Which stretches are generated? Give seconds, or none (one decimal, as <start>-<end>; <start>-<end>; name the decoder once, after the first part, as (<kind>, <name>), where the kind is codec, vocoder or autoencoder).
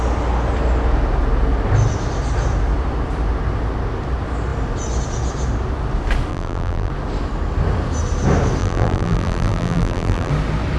6.3-6.9 (vocoder, BigVGAN v2); 8.6-10.3